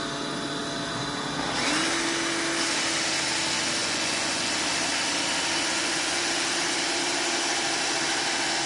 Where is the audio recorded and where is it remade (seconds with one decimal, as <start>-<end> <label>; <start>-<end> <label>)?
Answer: 0.0-3.8 recorded; 3.8-4.5 remade; 4.5-5.7 recorded; 5.7-6.3 remade; 6.3-8.7 recorded